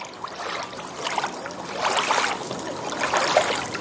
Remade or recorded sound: recorded